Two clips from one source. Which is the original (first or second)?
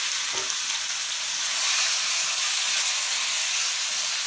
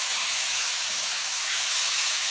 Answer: first